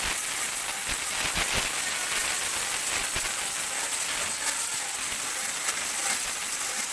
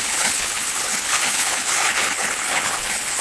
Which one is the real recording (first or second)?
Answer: first